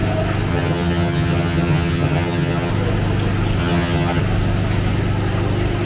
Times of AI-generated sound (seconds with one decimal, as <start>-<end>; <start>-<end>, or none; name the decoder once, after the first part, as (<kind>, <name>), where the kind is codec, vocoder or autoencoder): 0.5-2.7 (vocoder, HiFi-GAN); 3.6-4.2